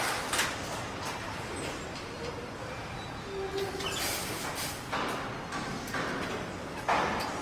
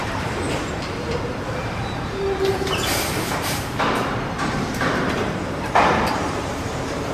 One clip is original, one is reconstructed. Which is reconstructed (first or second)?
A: second